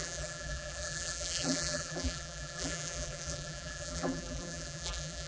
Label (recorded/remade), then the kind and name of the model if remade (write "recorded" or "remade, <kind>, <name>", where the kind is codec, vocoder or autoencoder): remade, vocoder, BigVGAN v2